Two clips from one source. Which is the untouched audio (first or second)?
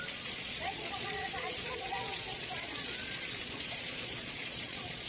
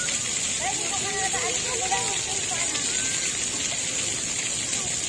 second